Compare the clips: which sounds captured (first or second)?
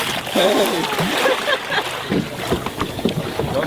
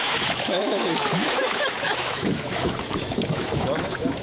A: first